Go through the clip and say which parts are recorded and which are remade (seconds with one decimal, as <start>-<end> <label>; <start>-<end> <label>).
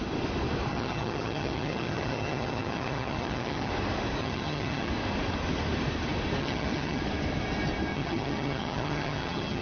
0.0-0.7 recorded; 0.7-3.7 remade; 3.7-4.2 recorded; 4.2-4.9 remade; 4.9-6.4 recorded; 6.4-7.0 remade; 7.0-7.9 recorded; 7.9-9.6 remade